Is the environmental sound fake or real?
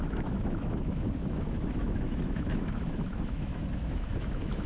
fake